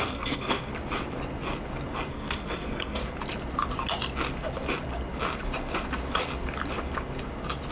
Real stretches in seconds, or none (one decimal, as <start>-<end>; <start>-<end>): 0.7-2.1; 3.0-7.7